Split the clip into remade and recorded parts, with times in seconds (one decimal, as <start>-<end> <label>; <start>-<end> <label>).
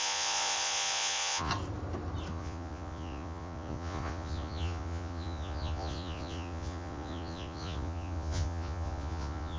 0.0-1.5 remade; 1.5-2.3 recorded; 2.3-9.6 remade